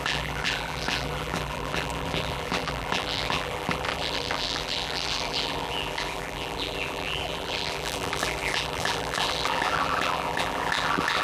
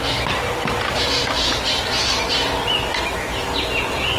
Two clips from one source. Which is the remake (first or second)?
first